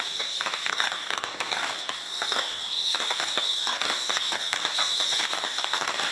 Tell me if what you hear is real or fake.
fake